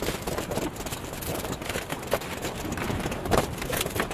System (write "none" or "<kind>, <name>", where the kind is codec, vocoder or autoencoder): vocoder, BigVGAN v2